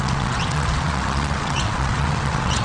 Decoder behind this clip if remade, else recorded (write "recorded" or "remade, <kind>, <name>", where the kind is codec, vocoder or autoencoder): remade, vocoder, WaveNeXt